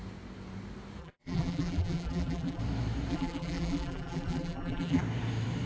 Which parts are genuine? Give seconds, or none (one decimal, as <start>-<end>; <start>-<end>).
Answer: 0.0-1.0; 2.6-3.1; 5.0-5.7